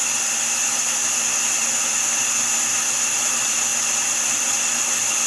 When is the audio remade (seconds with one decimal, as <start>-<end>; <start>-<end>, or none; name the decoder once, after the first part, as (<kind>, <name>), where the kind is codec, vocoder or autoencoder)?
3.2-3.7 (vocoder, BigVGAN v2); 4.3-5.3